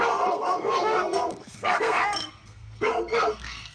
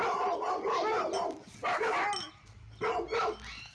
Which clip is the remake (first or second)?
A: first